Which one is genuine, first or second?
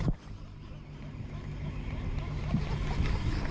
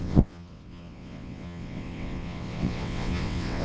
first